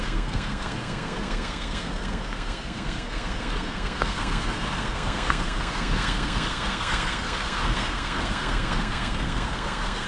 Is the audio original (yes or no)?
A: no